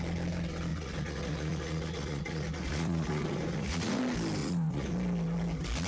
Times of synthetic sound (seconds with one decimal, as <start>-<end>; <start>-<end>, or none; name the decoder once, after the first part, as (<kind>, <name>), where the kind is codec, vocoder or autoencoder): 0.7-4.0 (vocoder, Vocos); 4.4-4.9